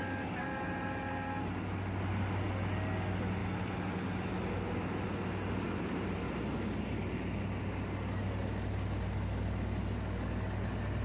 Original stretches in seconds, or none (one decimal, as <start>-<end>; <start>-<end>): 0.0-11.0